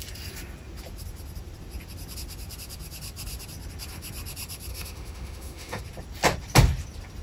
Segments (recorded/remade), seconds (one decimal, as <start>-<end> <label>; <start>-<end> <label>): 0.0-4.7 recorded; 4.7-5.8 remade; 5.8-7.2 recorded